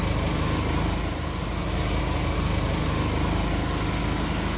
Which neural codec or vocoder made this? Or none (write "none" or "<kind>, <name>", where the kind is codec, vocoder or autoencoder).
none